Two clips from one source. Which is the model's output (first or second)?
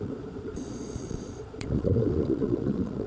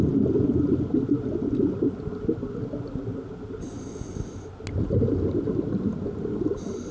first